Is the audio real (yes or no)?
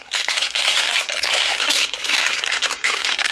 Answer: no